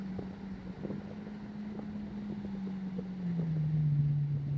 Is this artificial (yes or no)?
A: no